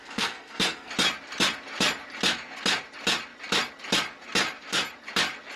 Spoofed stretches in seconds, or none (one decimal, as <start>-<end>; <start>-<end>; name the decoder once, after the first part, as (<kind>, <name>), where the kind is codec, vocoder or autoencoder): 0.0-0.9 (codec, SNAC)